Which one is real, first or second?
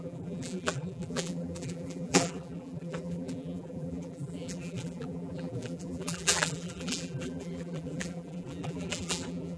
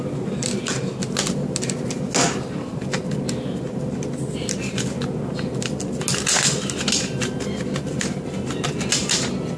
second